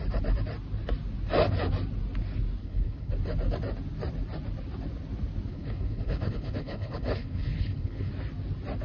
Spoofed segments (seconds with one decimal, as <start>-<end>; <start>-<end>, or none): 2.6-3.1; 5.5-8.1